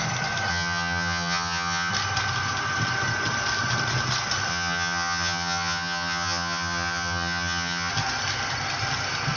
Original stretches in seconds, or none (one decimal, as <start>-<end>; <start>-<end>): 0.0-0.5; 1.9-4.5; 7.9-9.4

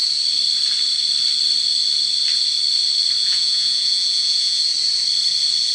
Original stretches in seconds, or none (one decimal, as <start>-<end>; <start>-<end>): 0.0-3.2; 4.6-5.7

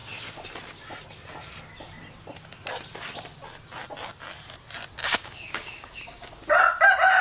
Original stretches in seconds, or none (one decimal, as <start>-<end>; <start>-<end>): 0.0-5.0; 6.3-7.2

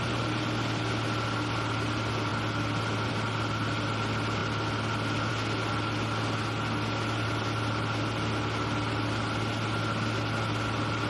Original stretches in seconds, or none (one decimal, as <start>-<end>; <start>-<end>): 0.0-11.1